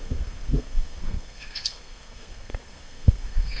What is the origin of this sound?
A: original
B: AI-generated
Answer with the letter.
B